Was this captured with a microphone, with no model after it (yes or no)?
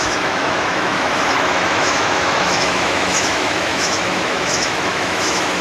no